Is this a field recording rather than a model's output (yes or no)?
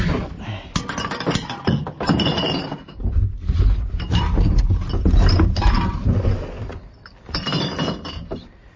yes